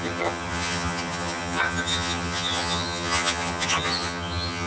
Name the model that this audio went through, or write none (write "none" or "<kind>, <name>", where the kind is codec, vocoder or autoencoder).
vocoder, HiFi-GAN